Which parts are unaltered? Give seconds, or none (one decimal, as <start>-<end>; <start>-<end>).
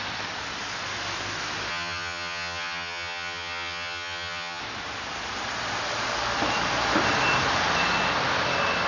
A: 0.0-1.7; 4.6-8.9